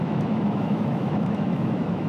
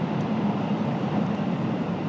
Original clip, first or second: second